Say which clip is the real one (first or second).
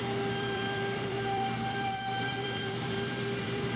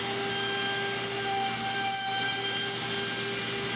second